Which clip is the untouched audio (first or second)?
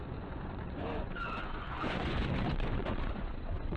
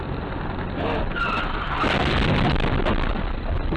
second